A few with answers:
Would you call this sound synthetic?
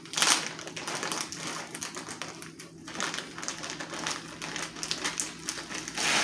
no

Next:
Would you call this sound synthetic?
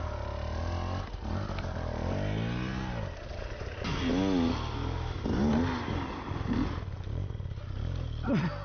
no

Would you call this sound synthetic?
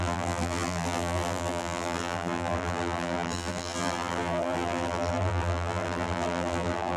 yes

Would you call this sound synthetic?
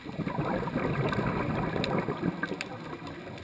no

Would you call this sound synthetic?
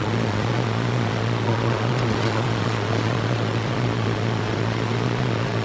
yes